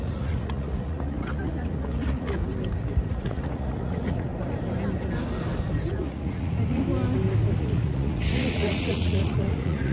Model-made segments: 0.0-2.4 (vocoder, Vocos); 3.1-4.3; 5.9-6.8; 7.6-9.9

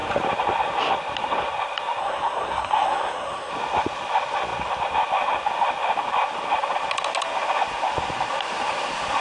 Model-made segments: 2.0-3.5 (codec, SNAC)

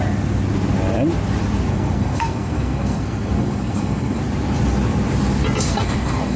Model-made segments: 1.7-4.2 (codec, SNAC); 5.7-6.4

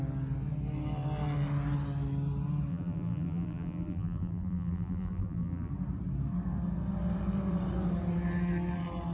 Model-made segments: 2.7-5.7 (vocoder, BigVGAN v2)

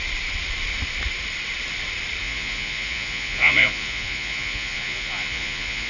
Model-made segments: 2.2-5.9 (vocoder, Vocos)

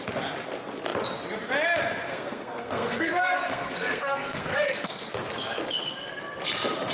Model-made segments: 2.1-5.1 (codec, SNAC)

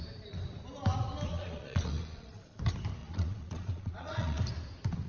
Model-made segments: 1.3-2.6 (vocoder, Vocos); 3.0-4.4

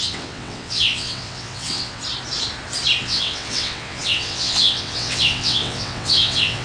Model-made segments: 0.0-2.0 (vocoder, WaveNeXt); 3.0-6.6